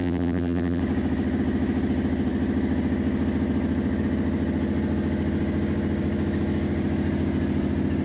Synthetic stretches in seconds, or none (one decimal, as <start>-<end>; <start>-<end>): 0.0-0.8